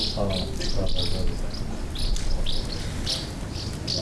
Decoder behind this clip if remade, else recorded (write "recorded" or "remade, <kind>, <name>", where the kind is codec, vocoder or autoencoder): recorded